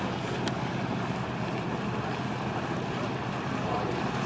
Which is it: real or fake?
real